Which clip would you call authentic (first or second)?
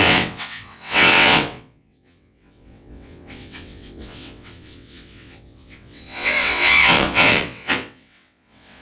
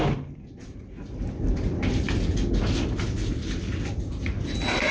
second